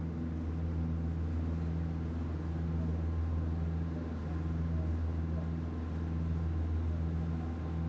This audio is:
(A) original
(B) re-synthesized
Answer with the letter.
A